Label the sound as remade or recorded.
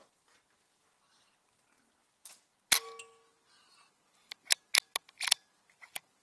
recorded